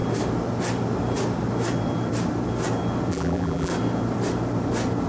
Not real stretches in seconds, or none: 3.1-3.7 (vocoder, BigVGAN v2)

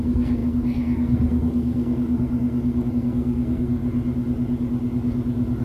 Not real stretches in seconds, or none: 0.0-3.8 (codec, SNAC)

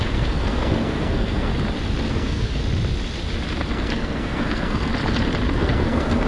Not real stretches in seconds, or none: 0.0-1.5 (codec, SNAC); 2.1-2.6; 3.7-4.9; 5.5-6.3

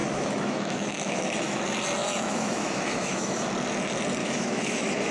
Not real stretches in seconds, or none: 0.0-1.6 (autoencoder, DAC-VAE); 2.0-3.5; 4.2-5.1